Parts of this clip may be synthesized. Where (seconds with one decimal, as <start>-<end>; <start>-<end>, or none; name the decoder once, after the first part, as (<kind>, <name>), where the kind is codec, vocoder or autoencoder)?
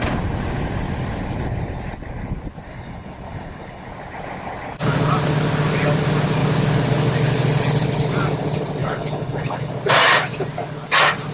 2.7-3.9 (codec, HILCodec); 8.8-9.7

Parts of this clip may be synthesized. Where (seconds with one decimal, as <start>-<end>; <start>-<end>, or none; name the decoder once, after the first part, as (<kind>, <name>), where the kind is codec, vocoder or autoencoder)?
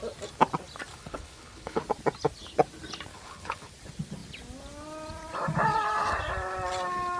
0.9-1.8 (codec, HILCodec); 3.1-3.7